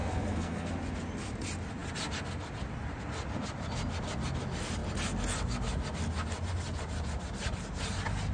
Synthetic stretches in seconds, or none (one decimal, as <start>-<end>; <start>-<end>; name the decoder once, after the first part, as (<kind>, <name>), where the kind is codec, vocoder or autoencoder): 0.0-0.7 (codec, SNAC)